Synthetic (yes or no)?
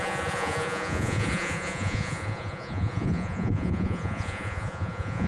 yes